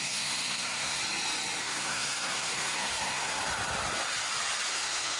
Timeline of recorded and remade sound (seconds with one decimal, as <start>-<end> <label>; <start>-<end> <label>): 0.0-1.0 remade; 1.0-1.6 recorded; 1.6-3.4 remade; 3.4-4.7 recorded; 4.7-5.2 remade